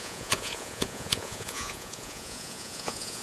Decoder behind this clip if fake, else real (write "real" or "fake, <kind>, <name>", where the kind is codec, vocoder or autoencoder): fake, vocoder, Vocos